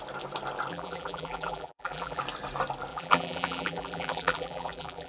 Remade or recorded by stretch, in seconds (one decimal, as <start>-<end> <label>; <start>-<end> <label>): 0.0-0.7 recorded; 0.7-2.2 remade; 2.2-2.9 recorded; 2.9-5.1 remade